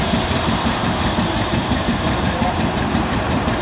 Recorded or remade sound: remade